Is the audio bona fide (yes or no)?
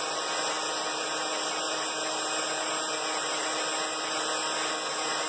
yes